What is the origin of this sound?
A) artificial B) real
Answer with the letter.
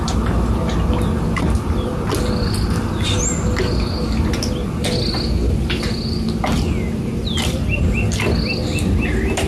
B